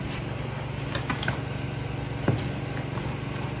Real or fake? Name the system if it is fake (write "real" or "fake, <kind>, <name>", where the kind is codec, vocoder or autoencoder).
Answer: real